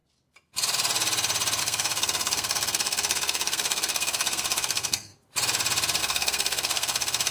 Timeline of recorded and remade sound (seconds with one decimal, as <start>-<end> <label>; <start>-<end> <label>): 0.0-1.6 recorded; 1.6-5.1 remade; 5.1-6.0 recorded; 6.0-7.3 remade